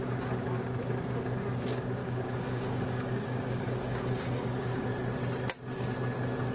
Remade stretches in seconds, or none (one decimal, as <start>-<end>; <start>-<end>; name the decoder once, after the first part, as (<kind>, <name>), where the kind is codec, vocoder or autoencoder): 2.0-4.9 (codec, DAC)